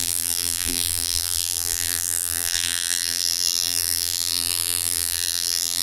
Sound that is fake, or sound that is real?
fake